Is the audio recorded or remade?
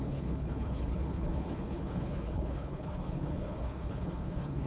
remade